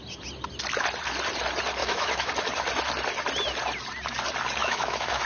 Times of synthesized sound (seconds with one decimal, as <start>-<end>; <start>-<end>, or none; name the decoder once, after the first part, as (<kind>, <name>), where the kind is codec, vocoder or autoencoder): 1.8-2.3 (autoencoder, DAC-VAE); 4.6-5.2